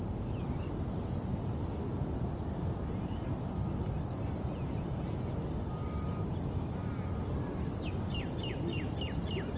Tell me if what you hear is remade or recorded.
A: recorded